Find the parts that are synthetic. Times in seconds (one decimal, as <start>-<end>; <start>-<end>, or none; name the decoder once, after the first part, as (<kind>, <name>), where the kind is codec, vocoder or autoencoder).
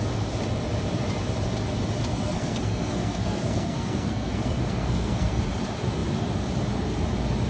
2.1-5.4 (codec, SNAC)